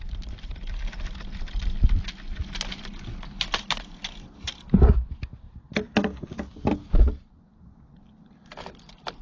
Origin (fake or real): real